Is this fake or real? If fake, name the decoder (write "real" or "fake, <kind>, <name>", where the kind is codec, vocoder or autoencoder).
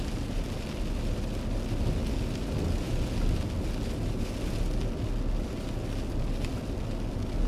real